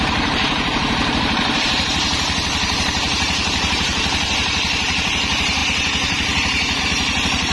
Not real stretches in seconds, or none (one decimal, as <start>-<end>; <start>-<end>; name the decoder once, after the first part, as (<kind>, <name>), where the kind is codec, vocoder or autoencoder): 0.0-7.5 (vocoder, BigVGAN v2)